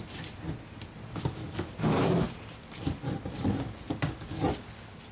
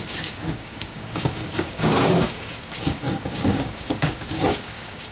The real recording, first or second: first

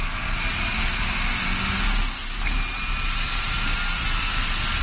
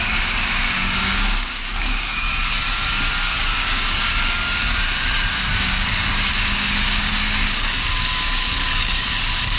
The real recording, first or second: first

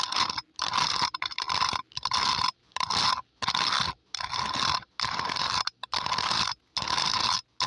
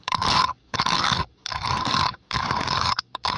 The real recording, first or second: first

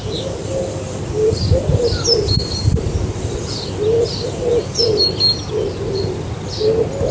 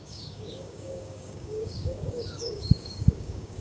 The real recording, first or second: first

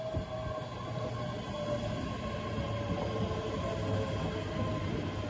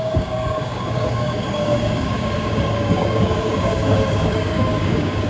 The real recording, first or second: first